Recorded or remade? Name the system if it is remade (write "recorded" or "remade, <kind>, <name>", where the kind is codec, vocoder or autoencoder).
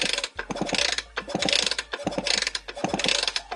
recorded